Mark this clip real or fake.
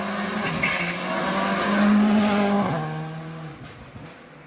real